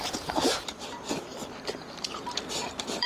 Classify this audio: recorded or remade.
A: remade